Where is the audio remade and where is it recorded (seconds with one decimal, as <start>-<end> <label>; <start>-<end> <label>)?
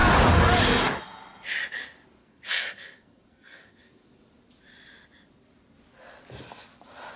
0.0-2.2 recorded; 2.2-4.1 remade; 4.1-7.2 recorded